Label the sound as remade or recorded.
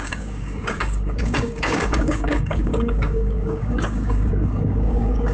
remade